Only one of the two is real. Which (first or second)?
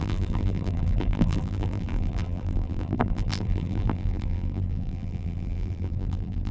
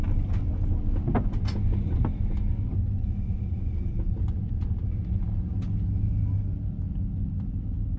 second